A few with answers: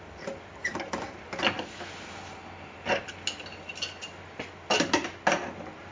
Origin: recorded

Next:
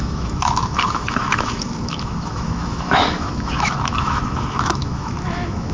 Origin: remade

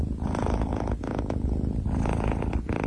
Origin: recorded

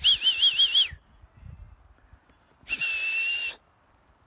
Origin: recorded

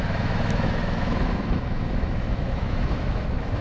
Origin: remade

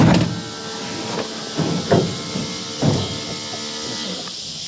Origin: recorded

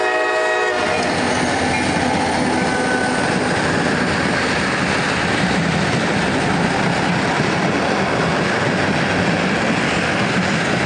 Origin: recorded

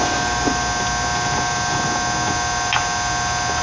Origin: recorded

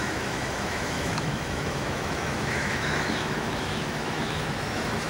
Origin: remade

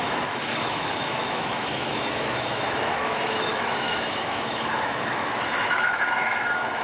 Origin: remade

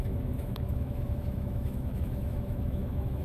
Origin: remade